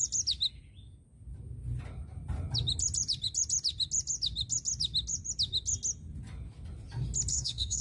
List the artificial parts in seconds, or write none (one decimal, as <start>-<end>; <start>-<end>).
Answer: 7.3-7.8